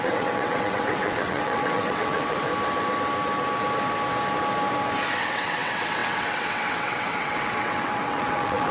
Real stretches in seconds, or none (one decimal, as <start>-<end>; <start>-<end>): 2.5-5.2